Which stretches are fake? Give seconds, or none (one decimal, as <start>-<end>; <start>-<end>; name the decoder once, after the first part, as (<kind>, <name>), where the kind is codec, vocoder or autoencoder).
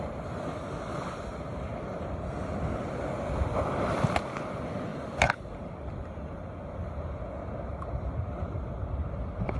none